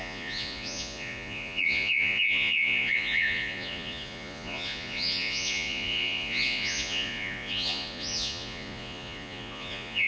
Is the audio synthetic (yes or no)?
yes